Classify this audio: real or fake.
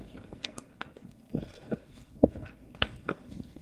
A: fake